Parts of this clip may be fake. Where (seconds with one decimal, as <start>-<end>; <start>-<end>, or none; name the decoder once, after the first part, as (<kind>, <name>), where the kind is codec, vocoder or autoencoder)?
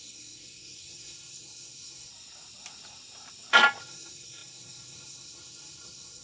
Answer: 0.0-2.1 (codec, SNAC); 3.8-6.2